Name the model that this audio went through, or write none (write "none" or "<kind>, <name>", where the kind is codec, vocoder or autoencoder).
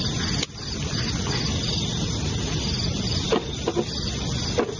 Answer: none